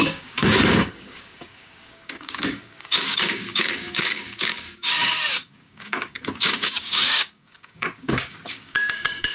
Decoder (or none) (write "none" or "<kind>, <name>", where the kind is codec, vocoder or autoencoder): codec, DAC